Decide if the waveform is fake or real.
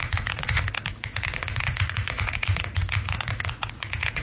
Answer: fake